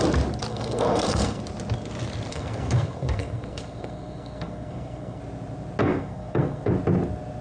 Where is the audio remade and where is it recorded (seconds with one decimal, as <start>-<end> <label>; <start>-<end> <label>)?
0.0-0.5 recorded; 0.5-1.4 remade; 1.4-2.3 recorded; 2.3-5.2 remade; 5.2-5.8 recorded; 5.8-6.7 remade; 6.7-7.4 recorded